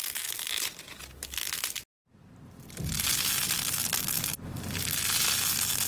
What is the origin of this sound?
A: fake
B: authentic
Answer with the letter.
B